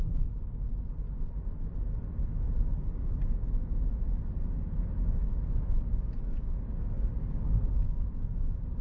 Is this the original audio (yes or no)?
yes